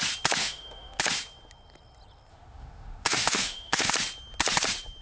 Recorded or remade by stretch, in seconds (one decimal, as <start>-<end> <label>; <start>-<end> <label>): 0.0-0.4 recorded; 0.4-1.0 remade; 1.0-2.3 recorded; 2.3-3.9 remade; 3.9-5.0 recorded